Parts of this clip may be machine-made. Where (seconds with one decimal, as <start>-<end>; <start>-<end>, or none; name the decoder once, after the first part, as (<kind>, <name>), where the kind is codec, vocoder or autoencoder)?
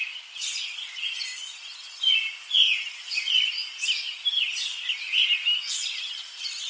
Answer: none